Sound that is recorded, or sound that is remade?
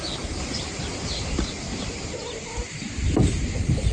remade